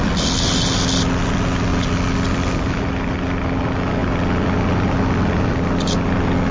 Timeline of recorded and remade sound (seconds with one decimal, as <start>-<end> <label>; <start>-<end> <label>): 0.0-6.5 recorded